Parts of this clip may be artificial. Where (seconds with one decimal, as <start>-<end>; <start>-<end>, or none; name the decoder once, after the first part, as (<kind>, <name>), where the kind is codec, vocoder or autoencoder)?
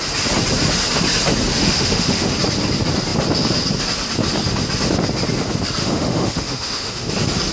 1.5-2.3 (autoencoder, DAC-VAE); 5.8-7.1